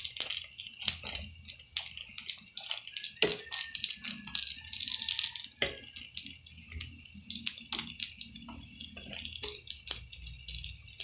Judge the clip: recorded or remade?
recorded